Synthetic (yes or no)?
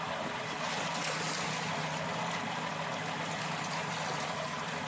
no